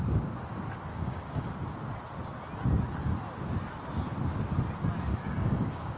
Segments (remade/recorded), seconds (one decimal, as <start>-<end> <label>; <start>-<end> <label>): 0.0-0.9 recorded; 0.9-1.5 remade; 1.5-5.1 recorded; 5.1-6.0 remade